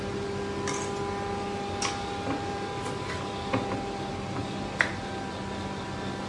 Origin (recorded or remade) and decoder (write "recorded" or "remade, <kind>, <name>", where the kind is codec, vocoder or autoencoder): recorded